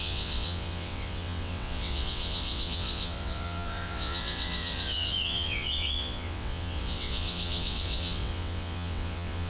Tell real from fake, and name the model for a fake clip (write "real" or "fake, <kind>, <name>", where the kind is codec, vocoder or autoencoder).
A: fake, vocoder, WaveNeXt